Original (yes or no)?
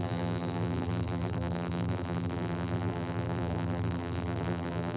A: no